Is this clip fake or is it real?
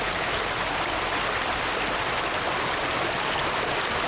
real